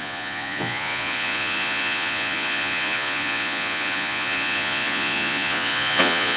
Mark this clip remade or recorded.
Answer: remade